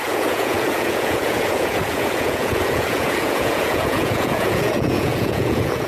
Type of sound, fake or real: fake